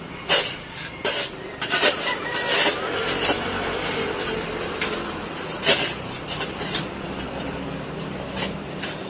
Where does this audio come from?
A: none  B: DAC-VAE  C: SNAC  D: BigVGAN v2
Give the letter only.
D